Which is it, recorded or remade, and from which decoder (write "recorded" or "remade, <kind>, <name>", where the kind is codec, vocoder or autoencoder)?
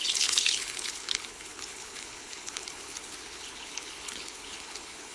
remade, codec, HILCodec